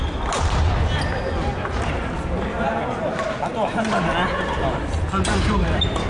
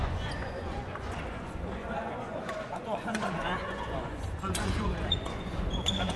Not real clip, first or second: second